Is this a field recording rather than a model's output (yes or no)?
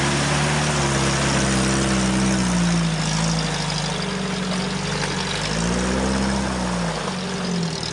yes